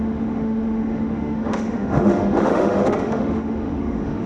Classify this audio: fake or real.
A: fake